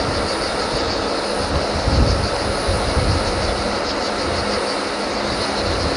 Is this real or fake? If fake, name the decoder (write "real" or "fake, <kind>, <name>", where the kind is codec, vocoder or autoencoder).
real